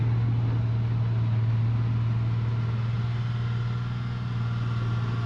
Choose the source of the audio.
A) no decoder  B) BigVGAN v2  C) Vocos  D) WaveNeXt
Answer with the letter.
A